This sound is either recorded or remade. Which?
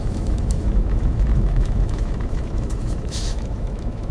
remade